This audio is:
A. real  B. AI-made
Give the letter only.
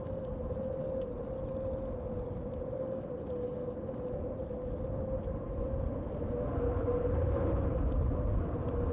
A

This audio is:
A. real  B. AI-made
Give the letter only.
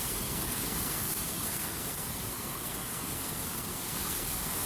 B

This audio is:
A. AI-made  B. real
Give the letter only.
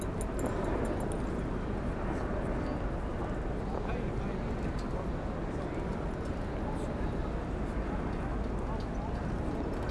B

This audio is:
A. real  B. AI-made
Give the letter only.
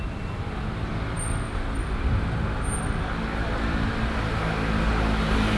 A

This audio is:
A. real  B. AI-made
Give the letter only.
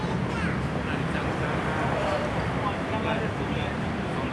A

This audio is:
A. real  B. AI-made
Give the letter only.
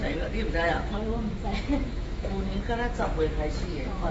B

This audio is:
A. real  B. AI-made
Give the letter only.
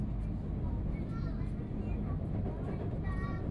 A